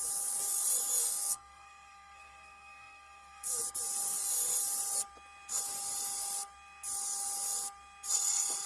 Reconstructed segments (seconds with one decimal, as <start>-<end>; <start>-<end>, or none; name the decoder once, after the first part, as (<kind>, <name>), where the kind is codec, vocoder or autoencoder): 1.0-3.6 (codec, SNAC)